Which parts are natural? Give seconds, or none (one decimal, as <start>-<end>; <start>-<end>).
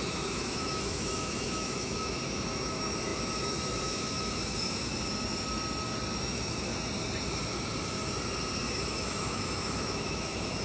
4.9-6.2; 6.7-8.7